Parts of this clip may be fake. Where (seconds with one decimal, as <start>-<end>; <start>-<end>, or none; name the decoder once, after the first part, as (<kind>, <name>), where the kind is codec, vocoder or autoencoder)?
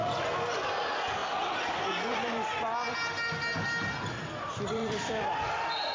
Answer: 0.6-1.2 (vocoder, BigVGAN v2); 4.7-5.9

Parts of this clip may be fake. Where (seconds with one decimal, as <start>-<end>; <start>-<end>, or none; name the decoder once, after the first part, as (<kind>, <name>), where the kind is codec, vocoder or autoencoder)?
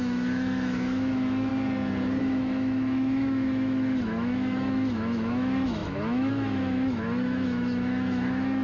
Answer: 0.0-1.5 (autoencoder, DAC-VAE); 2.2-8.6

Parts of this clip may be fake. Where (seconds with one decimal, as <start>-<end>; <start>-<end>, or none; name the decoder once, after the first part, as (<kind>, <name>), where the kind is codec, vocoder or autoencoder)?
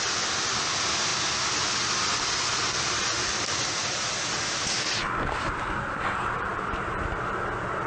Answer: none